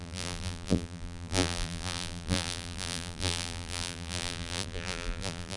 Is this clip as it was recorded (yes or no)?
no